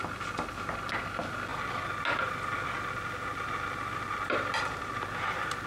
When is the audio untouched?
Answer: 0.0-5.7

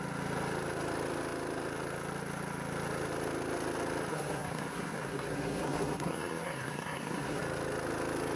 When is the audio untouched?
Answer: 0.0-4.1; 7.4-8.4

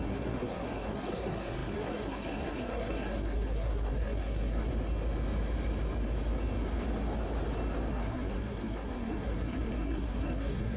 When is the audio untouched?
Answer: 4.7-7.9

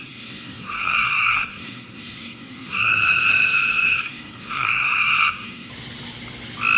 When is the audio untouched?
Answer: 5.7-6.8